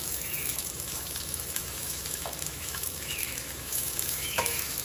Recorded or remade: remade